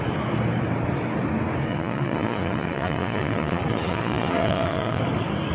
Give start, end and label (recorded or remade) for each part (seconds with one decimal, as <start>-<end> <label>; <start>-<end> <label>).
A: 0.0-1.7 recorded; 1.7-5.0 remade; 5.0-5.5 recorded